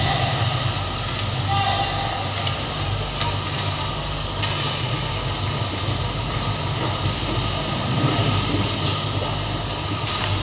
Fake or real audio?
real